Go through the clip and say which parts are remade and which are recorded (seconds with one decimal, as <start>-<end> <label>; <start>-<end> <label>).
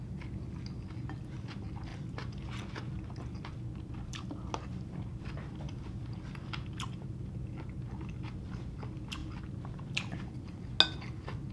0.0-11.5 recorded